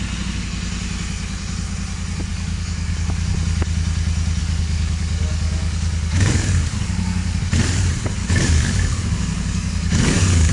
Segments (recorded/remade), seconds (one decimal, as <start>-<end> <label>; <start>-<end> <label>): 0.0-2.3 recorded; 2.3-3.3 remade; 3.3-4.4 recorded; 4.4-7.4 remade; 7.4-8.2 recorded; 8.2-10.5 remade